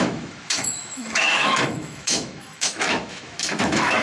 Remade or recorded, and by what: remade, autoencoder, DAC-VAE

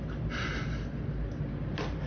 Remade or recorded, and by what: recorded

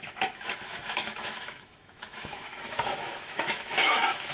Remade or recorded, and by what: remade, autoencoder, DAC-VAE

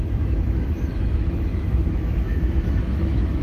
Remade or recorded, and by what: remade, autoencoder, DAC-VAE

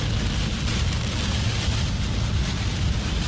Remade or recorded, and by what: recorded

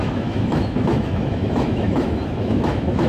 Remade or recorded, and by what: remade, autoencoder, DAC-VAE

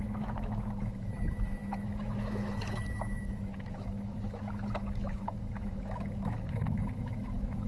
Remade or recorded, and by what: remade, autoencoder, DAC-VAE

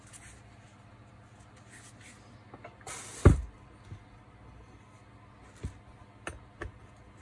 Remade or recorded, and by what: recorded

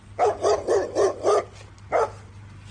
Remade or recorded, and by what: recorded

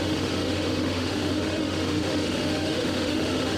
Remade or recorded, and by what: remade, autoencoder, DAC-VAE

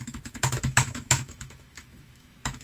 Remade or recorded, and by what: remade, autoencoder, DAC-VAE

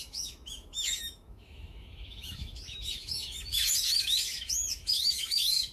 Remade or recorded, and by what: remade, autoencoder, DAC-VAE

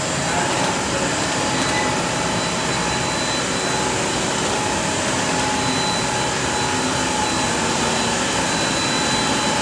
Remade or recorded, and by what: recorded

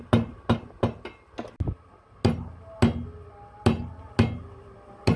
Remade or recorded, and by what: recorded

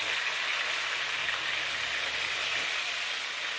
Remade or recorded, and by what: recorded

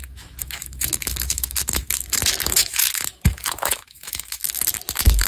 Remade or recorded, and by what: remade, autoencoder, DAC-VAE